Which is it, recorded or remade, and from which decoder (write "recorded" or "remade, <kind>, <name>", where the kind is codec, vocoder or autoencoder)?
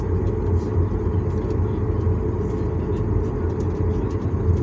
recorded